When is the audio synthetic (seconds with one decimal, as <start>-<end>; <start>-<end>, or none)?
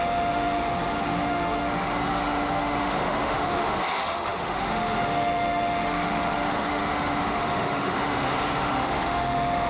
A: 0.0-9.7